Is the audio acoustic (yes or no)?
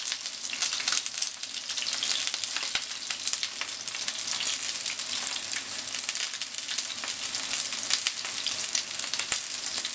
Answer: yes